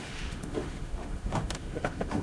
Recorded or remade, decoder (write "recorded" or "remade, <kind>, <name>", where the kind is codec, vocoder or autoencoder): remade, autoencoder, DAC-VAE